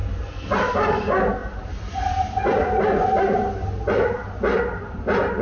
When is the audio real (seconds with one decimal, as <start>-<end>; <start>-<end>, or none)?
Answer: 0.0-5.4